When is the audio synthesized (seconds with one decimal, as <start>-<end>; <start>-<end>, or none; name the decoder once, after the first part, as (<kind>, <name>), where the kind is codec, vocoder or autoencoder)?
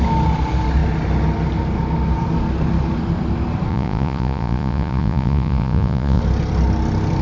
3.7-6.2 (vocoder, Vocos)